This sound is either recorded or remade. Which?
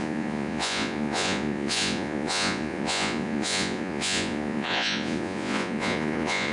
remade